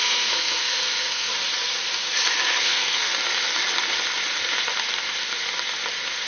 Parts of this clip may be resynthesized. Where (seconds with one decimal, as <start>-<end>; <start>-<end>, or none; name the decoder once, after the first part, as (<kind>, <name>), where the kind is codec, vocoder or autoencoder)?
0.0-1.3 (codec, SNAC); 2.6-3.1